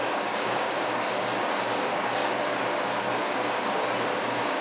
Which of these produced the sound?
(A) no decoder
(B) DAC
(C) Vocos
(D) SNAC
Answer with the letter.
B